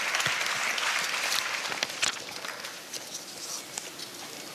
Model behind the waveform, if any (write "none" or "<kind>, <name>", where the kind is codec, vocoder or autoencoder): none